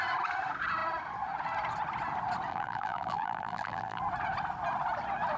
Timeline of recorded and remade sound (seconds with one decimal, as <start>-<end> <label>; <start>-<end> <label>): 0.0-2.5 recorded; 2.5-4.0 remade; 4.0-5.4 recorded